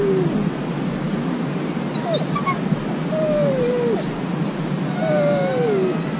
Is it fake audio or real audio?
real